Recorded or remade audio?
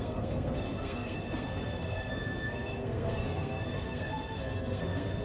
remade